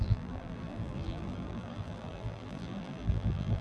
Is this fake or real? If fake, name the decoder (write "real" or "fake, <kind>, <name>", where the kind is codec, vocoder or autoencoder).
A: fake, vocoder, BigVGAN v2